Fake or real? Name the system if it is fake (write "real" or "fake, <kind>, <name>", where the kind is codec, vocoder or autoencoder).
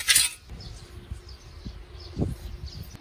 real